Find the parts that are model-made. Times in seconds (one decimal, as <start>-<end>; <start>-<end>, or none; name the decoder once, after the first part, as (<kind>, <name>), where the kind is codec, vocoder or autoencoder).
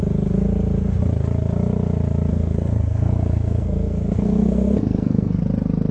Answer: 2.3-5.4 (codec, SNAC)